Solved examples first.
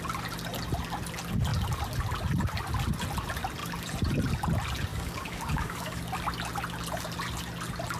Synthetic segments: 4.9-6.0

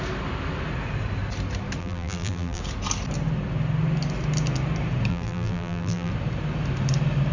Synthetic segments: 1.8-2.6; 5.1-6.1